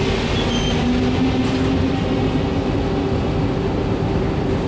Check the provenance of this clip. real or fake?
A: real